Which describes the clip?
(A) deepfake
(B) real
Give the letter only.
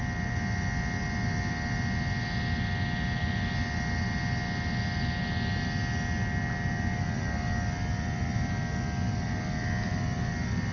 B